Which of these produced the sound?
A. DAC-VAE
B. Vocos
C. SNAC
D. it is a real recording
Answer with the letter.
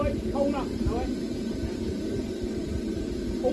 D